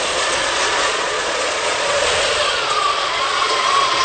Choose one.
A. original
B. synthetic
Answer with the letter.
B